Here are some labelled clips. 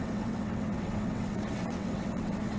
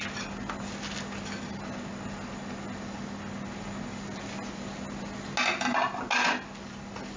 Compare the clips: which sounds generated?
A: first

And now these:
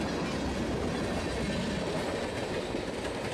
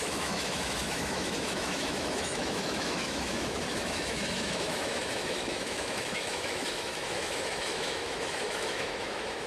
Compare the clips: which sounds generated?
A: second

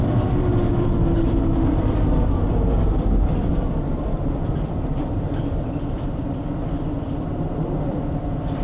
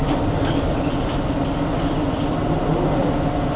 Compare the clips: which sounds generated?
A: first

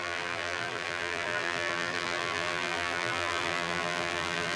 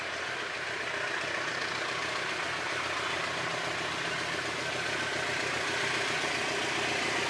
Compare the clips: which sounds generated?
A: first